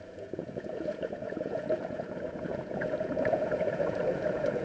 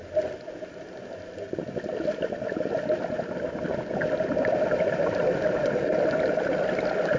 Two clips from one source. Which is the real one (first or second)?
second